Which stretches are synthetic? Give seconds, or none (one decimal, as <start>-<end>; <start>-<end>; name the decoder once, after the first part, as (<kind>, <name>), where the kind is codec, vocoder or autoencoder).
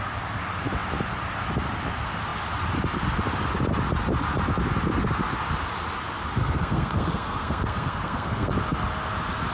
6.4-8.5 (codec, SNAC)